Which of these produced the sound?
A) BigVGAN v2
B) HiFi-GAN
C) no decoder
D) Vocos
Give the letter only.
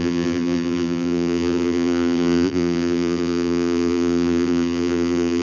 A